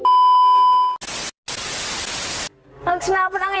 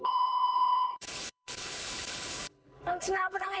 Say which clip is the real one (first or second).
first